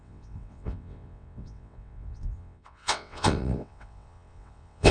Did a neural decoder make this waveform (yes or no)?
yes